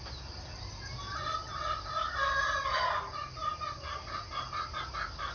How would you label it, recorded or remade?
recorded